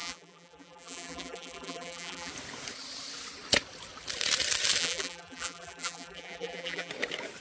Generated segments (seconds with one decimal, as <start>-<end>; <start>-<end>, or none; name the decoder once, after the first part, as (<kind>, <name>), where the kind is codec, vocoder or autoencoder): 0.0-2.3 (vocoder, BigVGAN v2); 4.8-6.9